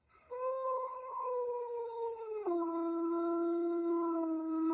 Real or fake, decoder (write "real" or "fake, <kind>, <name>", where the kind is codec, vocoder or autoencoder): fake, codec, HILCodec